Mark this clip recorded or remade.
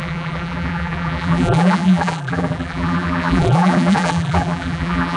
remade